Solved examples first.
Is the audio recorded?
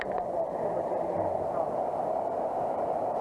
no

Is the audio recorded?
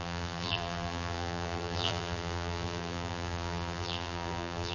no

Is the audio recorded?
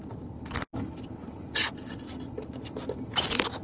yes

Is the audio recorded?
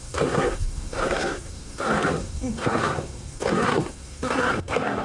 no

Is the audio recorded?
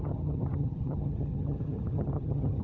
no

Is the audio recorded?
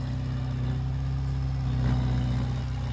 yes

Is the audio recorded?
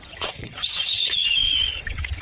no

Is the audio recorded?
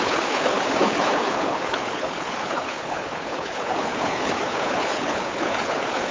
no